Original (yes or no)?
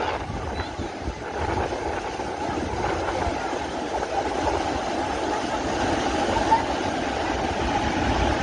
yes